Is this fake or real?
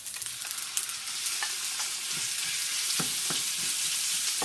real